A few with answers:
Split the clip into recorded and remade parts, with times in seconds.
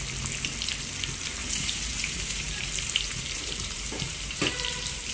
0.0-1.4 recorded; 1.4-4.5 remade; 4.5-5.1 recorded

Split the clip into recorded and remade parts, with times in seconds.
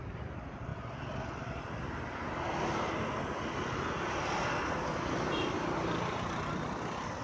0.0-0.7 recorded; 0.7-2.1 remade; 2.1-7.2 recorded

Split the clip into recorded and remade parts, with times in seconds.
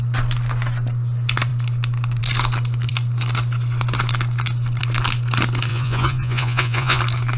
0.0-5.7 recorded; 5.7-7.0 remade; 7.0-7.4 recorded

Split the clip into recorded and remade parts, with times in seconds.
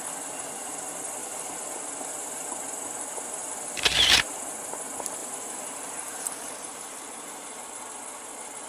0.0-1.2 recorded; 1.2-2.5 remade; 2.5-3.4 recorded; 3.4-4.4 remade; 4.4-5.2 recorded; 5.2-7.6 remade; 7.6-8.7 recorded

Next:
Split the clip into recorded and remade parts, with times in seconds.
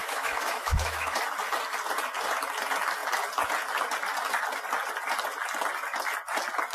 0.0-1.2 remade; 1.2-6.7 recorded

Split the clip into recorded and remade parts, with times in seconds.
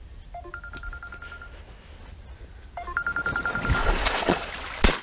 0.0-3.8 recorded; 3.8-4.5 remade; 4.5-5.0 recorded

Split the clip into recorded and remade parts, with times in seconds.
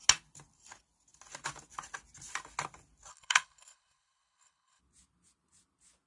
0.0-3.1 recorded; 3.1-4.8 remade; 4.8-6.1 recorded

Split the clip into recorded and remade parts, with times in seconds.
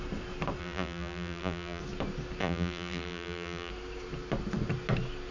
0.0-0.6 recorded; 0.6-1.8 remade; 1.8-2.4 recorded; 2.4-3.7 remade; 3.7-5.3 recorded